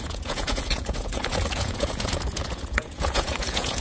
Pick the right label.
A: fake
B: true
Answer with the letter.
A